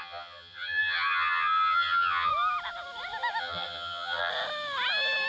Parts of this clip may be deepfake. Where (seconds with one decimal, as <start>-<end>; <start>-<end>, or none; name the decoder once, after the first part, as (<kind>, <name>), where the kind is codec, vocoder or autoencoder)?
0.0-2.3 (vocoder, HiFi-GAN); 3.4-4.3